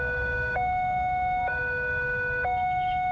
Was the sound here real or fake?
fake